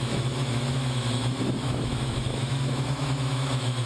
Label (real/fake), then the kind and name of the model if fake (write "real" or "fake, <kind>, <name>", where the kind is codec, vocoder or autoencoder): fake, autoencoder, DAC-VAE